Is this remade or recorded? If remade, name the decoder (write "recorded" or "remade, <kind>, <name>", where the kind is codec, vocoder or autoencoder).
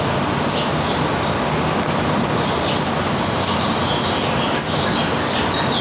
recorded